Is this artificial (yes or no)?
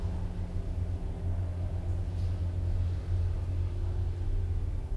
no